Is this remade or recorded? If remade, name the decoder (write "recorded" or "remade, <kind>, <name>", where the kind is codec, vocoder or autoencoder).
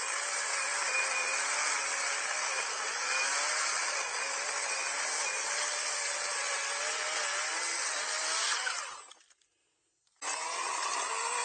recorded